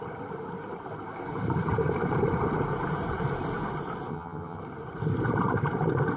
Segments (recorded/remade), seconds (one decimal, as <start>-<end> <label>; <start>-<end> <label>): 0.0-4.1 recorded; 4.1-4.6 remade; 4.6-6.2 recorded